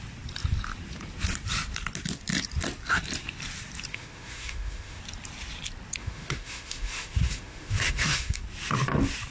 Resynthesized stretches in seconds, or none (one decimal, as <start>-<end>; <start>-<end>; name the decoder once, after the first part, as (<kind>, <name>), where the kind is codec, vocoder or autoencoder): 3.9-5.0 (autoencoder, DAC-VAE); 6.0-8.4